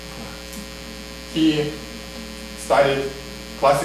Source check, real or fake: real